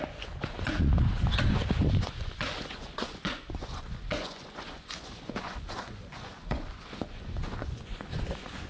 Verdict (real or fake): fake